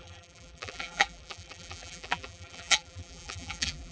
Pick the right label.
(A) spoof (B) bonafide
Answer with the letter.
A